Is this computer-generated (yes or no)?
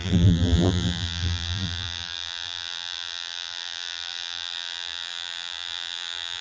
yes